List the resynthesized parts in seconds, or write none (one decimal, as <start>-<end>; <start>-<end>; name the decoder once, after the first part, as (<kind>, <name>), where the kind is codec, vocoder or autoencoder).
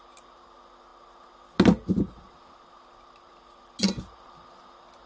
none